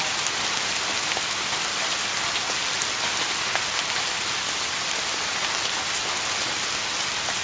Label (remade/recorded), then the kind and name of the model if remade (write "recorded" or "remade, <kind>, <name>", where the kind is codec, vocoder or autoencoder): recorded